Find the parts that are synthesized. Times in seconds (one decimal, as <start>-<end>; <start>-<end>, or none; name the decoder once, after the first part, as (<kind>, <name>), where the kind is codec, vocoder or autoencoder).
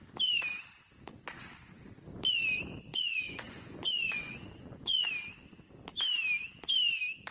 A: 2.9-5.1 (vocoder, Vocos)